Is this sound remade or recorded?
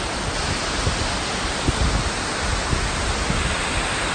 recorded